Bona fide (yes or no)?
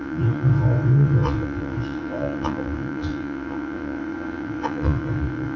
no